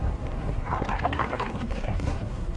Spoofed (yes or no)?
yes